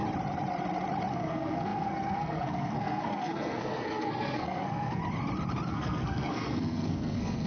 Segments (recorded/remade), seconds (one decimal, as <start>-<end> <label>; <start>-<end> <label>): 0.0-1.1 recorded; 1.1-5.0 remade; 5.0-5.7 recorded; 5.7-7.5 remade